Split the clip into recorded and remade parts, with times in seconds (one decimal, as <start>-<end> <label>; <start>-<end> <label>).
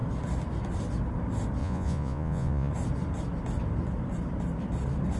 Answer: 0.0-1.6 recorded; 1.6-2.7 remade; 2.7-5.2 recorded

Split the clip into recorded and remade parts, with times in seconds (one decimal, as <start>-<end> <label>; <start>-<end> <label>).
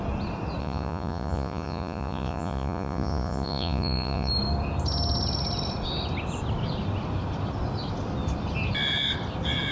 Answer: 0.0-0.6 recorded; 0.6-4.3 remade; 4.3-9.7 recorded